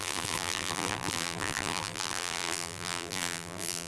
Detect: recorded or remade remade